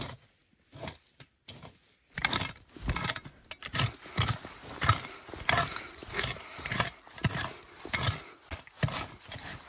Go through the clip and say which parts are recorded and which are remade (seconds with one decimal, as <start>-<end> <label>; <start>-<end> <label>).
0.0-9.7 recorded